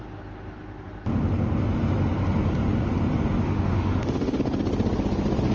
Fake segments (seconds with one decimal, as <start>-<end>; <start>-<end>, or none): 3.4-4.4